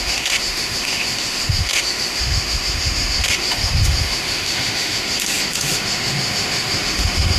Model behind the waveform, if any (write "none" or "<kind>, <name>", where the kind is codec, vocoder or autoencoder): autoencoder, DAC-VAE